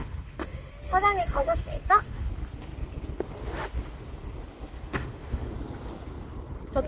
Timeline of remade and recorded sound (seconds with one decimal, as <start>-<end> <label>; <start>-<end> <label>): 0.0-0.7 remade; 0.7-1.2 recorded; 1.2-2.3 remade; 2.3-4.9 recorded; 4.9-5.5 remade; 5.5-6.9 recorded